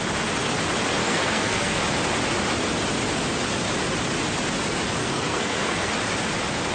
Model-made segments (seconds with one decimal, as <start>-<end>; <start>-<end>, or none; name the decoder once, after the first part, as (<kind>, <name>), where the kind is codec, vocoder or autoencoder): 1.0-1.8 (codec, SNAC); 5.0-5.9